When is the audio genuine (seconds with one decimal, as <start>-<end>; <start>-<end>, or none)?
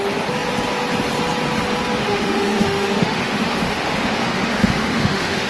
0.0-2.0